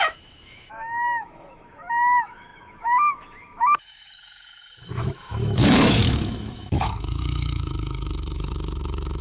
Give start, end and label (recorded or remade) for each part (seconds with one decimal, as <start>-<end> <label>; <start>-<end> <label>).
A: 0.0-9.2 remade